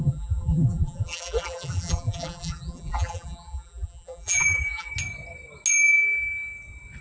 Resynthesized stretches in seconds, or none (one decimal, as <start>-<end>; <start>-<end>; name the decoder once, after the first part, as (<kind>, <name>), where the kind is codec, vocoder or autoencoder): 0.0-4.9 (vocoder, BigVGAN v2)